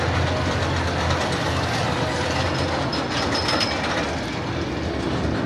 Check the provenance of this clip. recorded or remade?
recorded